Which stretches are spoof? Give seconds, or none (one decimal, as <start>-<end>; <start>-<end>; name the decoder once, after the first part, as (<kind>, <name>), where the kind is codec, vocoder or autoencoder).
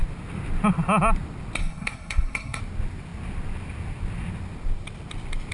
1.6-2.6 (codec, SNAC)